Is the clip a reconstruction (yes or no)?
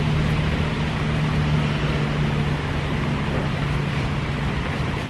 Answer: no